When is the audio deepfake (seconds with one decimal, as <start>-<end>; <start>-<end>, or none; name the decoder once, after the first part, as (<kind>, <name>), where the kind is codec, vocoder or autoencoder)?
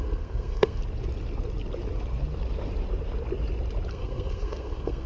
0.0-0.8 (codec, SNAC); 3.9-5.1